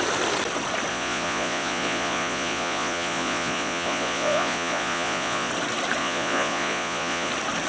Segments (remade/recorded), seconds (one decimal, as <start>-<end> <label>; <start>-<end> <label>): 0.0-0.9 recorded; 0.9-5.5 remade; 5.5-6.0 recorded; 6.0-7.3 remade; 7.3-7.7 recorded